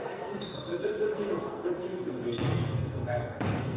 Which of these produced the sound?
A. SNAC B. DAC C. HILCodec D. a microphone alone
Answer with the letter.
A